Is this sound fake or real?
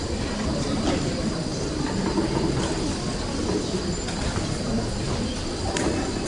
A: real